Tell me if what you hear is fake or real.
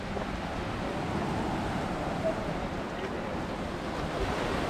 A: real